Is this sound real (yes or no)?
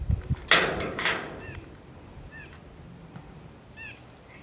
yes